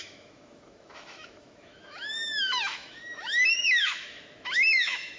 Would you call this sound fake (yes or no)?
yes